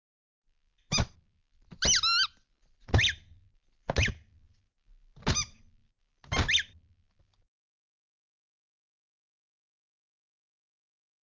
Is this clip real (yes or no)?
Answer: yes